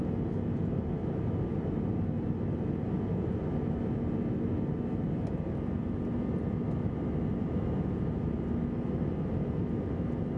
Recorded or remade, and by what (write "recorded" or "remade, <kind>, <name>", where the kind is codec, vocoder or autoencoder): recorded